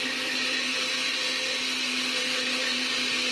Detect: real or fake real